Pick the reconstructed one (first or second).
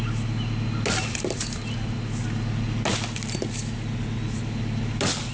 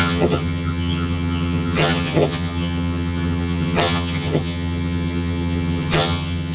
second